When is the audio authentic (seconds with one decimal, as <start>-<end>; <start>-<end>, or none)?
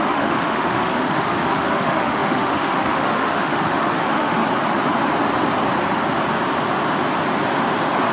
4.4-8.1